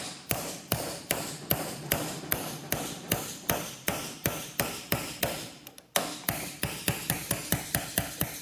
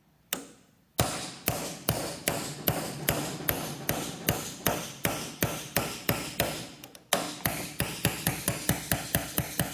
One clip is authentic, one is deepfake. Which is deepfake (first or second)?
first